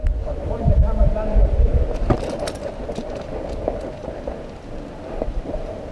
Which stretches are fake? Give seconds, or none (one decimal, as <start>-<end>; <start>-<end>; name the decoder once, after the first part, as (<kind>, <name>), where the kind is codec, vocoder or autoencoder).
none